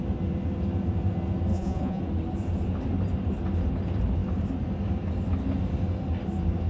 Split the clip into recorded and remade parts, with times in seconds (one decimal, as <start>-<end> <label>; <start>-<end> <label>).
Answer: 0.0-1.5 recorded; 1.5-2.0 remade; 2.0-6.7 recorded